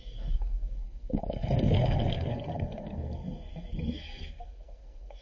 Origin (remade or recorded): remade